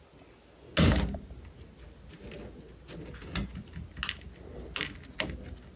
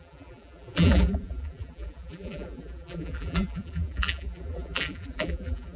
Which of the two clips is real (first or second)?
first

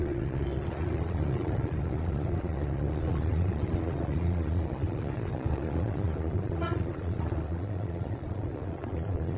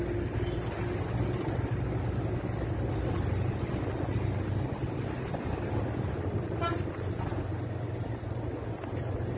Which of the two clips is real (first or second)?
second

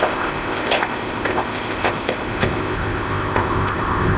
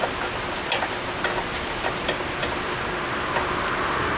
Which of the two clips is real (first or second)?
second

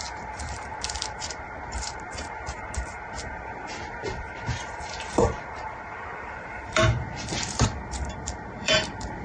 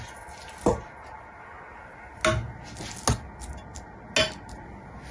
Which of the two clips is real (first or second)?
second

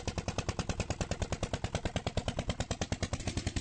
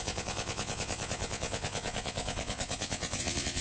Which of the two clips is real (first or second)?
first